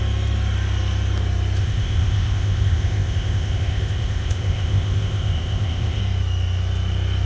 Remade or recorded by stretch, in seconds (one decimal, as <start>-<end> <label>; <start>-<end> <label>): 0.0-1.6 recorded; 1.6-6.0 remade; 6.0-7.3 recorded